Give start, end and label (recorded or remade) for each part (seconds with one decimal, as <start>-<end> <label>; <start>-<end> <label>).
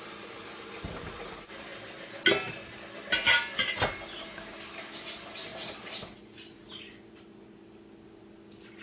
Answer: 0.0-4.2 recorded; 4.2-4.7 remade; 4.7-8.8 recorded